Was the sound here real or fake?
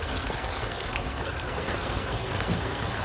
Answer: fake